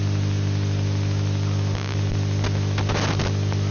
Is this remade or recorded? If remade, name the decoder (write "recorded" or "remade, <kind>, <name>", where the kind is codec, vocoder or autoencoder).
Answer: recorded